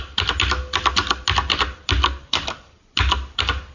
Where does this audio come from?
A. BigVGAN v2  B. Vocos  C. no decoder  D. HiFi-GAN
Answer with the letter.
A